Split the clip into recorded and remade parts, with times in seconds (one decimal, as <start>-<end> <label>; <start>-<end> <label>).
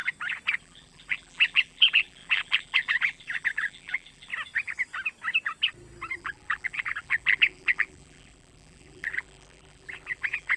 0.0-0.6 recorded; 0.6-4.3 remade; 4.3-6.2 recorded; 6.2-10.6 remade